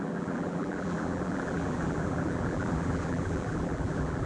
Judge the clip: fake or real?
fake